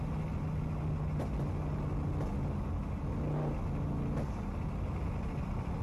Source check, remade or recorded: recorded